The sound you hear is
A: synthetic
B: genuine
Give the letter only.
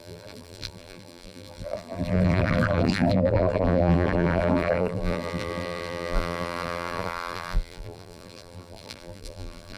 A